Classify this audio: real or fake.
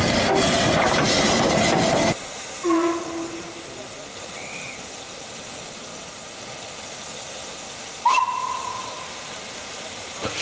real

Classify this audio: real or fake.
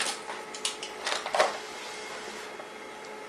real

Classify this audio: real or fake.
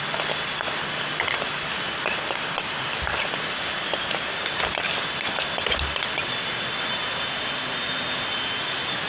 fake